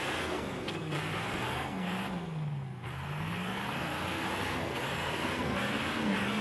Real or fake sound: fake